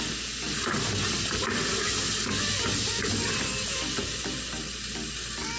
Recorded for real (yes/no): yes